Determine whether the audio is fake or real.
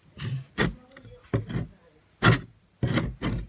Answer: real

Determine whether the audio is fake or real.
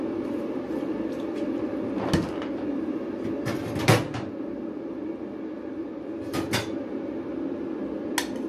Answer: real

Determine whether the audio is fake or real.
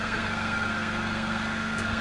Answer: fake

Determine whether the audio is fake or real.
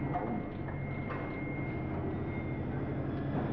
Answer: real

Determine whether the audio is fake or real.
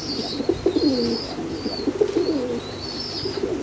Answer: real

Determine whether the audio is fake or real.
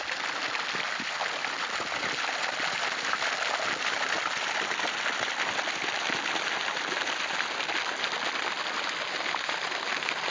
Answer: real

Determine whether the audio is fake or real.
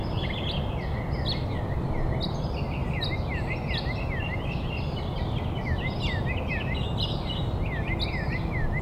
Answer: real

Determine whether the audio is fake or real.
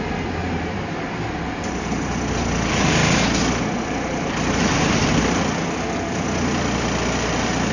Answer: real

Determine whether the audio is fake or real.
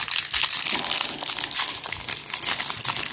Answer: real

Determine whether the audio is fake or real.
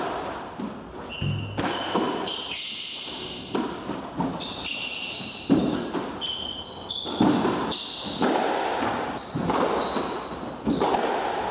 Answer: real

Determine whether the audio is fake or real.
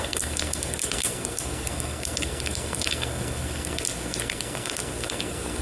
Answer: fake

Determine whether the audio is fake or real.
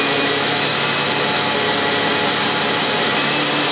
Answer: real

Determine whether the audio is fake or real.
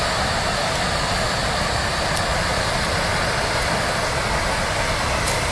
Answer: real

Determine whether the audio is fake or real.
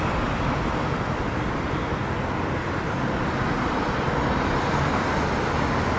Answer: real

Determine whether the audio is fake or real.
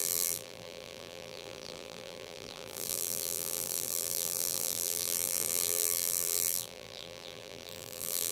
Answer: fake